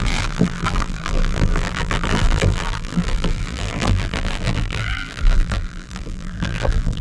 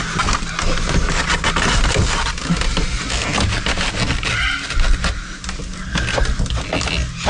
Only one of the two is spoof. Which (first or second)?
first